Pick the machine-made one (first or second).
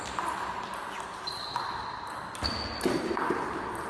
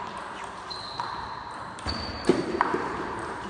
second